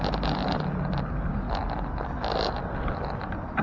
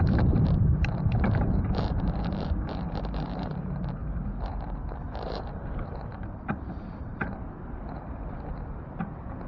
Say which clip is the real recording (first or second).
first